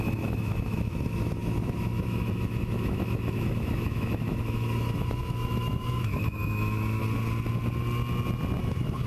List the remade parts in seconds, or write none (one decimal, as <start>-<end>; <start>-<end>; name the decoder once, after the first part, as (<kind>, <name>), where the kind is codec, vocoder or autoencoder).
0.0-7.0 (autoencoder, DAC-VAE); 8.6-9.1